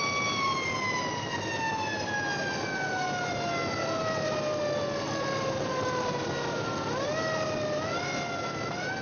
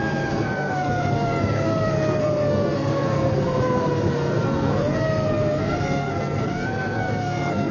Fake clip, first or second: second